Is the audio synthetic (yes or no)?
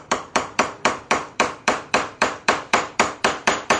yes